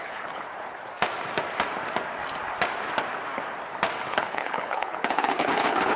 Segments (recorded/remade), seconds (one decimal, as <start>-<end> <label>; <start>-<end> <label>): 0.0-0.5 remade; 0.5-4.1 recorded; 4.1-6.0 remade